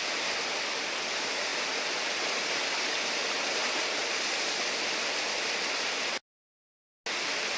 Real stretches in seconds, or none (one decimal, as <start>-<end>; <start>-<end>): 0.0-7.6